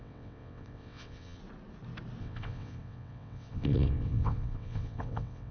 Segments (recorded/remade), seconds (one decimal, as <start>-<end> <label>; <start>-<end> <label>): 0.0-1.4 remade; 1.4-2.2 recorded; 2.2-5.5 remade